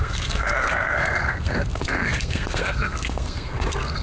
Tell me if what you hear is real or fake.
fake